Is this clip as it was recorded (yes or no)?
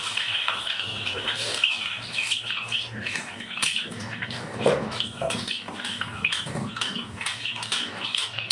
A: no